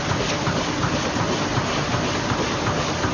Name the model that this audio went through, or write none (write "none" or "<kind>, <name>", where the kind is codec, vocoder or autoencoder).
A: none